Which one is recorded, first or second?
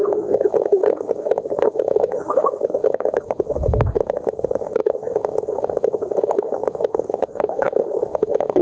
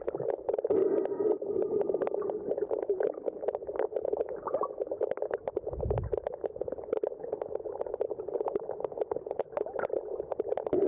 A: second